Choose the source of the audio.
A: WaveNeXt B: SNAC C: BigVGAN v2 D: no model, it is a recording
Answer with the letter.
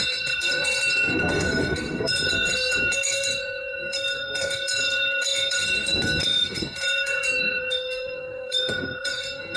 B